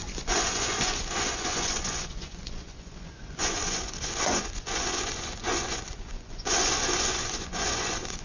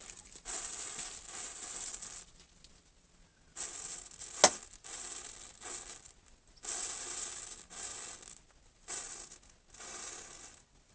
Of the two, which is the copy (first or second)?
first